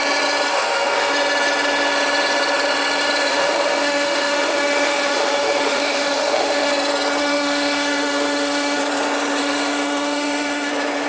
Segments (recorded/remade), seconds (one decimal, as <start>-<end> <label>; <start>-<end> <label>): 0.0-0.5 recorded; 0.5-1.1 remade; 1.1-3.3 recorded; 3.3-6.7 remade; 6.7-7.2 recorded; 7.2-8.8 remade; 8.8-9.4 recorded; 9.4-10.7 remade; 10.7-11.1 recorded